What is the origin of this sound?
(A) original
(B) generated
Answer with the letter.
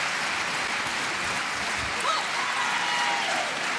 A